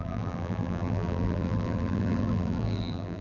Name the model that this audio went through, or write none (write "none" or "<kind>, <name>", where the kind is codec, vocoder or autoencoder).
vocoder, BigVGAN v2